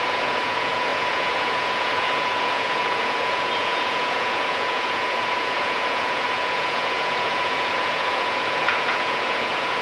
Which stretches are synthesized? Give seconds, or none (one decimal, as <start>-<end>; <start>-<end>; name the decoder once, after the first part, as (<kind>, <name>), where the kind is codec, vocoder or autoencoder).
0.0-9.8 (vocoder, Vocos)